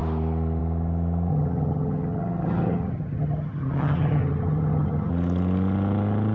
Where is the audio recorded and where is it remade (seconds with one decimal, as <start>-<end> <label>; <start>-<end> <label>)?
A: 0.0-1.3 recorded; 1.3-5.1 remade; 5.1-6.3 recorded